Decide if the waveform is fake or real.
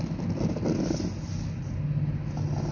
real